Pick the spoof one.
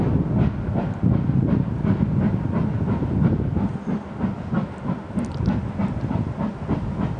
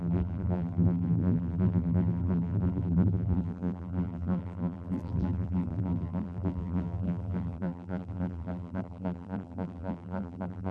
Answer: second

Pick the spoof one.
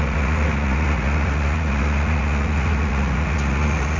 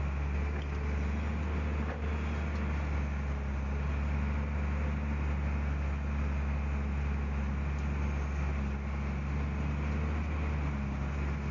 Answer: first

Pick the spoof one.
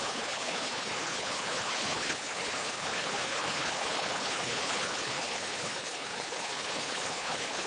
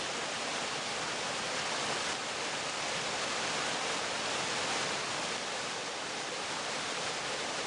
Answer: first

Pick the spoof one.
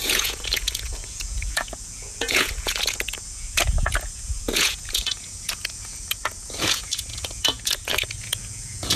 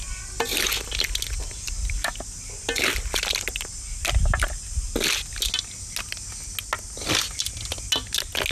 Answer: first